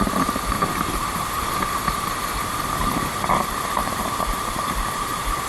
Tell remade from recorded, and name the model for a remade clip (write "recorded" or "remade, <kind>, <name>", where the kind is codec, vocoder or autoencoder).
remade, vocoder, BigVGAN v2